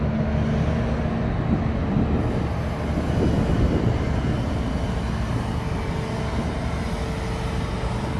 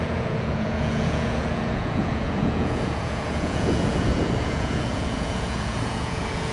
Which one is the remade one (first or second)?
second